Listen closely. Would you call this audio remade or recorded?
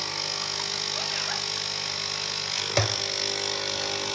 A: recorded